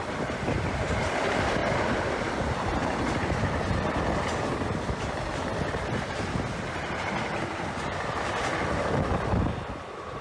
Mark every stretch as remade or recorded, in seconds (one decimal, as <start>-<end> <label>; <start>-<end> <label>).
0.0-10.2 recorded